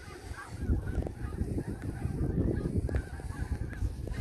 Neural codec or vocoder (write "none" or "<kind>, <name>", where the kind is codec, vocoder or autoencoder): none